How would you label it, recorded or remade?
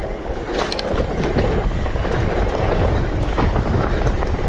recorded